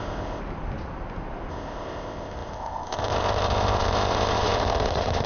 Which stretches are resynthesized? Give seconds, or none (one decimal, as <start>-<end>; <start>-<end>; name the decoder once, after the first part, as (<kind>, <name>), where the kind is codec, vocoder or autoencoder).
0.0-0.4 (codec, ZipCodec); 1.5-5.3